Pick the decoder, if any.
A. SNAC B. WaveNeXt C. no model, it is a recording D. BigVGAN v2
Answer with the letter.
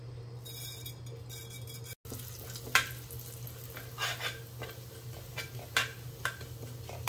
C